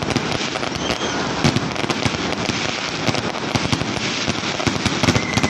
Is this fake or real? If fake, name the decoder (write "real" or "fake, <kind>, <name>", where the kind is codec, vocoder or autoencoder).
real